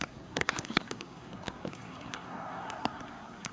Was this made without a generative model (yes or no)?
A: no